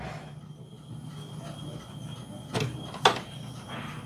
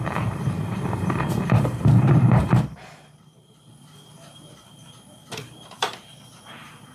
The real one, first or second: first